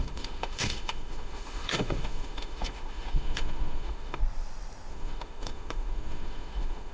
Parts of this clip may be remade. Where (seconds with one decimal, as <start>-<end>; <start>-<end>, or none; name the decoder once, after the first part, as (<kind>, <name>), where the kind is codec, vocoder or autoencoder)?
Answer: 0.0-4.2 (autoencoder, DAC-VAE); 4.9-6.9